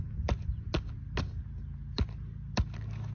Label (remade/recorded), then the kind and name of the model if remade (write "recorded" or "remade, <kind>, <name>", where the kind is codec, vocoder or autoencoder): recorded